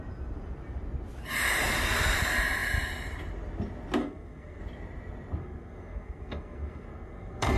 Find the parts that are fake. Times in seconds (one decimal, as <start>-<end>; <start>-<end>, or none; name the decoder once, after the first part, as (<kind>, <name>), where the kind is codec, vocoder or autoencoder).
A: 4.0-4.6 (codec, SNAC); 5.4-7.6